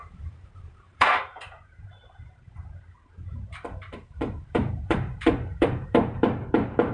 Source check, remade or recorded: remade